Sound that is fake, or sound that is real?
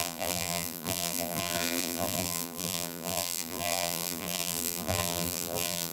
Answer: fake